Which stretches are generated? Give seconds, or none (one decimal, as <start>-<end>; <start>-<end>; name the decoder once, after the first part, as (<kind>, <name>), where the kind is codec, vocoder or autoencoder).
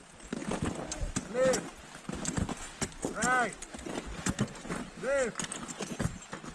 none